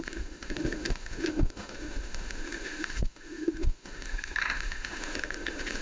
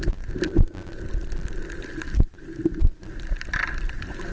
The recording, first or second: second